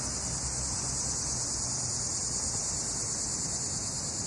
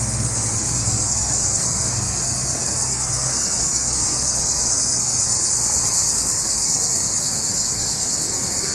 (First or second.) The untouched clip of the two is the first